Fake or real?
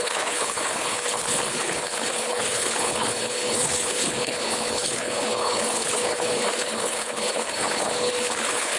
fake